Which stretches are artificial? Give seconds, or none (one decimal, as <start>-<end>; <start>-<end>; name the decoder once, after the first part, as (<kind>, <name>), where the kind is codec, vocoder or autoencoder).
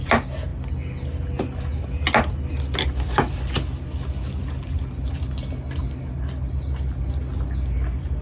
none